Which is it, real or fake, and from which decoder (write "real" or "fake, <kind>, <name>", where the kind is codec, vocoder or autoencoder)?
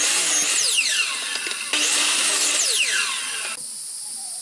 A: real